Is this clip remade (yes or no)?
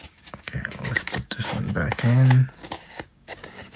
yes